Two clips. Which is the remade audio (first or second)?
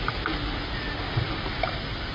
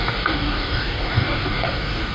second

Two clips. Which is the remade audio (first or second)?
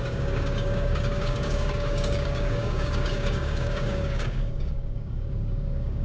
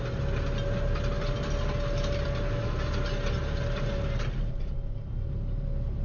first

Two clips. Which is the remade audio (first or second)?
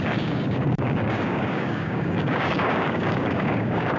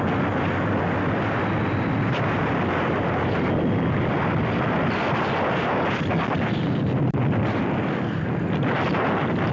first